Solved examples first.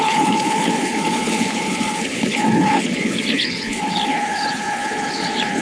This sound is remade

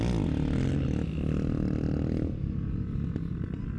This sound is recorded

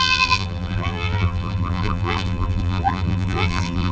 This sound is remade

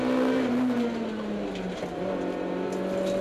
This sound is recorded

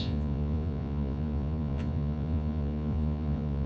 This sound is remade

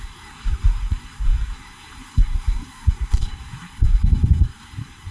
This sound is remade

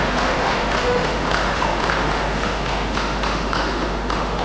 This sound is remade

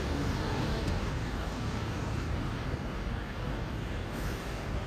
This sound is remade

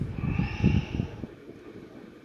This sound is recorded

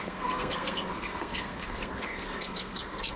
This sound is remade